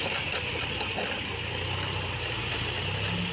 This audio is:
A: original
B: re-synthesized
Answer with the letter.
A